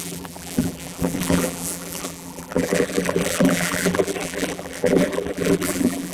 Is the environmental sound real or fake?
fake